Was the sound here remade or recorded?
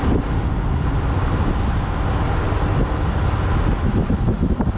recorded